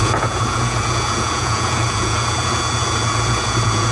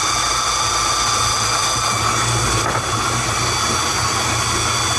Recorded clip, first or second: second